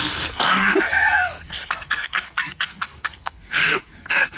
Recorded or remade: remade